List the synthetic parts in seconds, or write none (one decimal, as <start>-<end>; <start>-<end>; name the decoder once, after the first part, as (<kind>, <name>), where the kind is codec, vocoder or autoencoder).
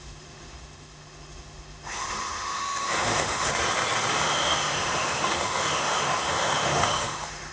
0.0-3.5 (autoencoder, DAC-VAE); 4.1-7.5